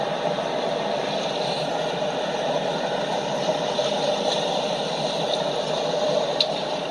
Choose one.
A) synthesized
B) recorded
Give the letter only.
B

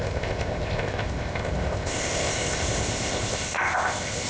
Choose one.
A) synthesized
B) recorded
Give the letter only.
A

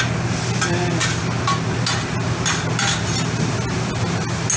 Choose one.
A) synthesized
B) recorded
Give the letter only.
B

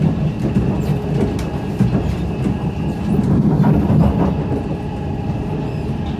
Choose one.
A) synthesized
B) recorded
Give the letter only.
B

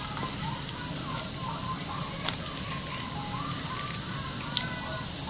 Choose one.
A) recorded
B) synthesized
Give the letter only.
A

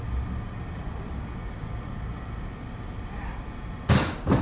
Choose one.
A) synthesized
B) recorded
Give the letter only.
B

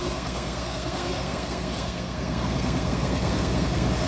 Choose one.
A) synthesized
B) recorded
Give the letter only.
A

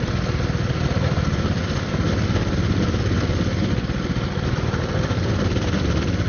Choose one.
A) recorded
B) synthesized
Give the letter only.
A